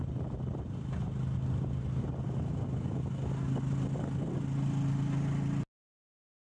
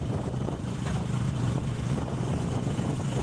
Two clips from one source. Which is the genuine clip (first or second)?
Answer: first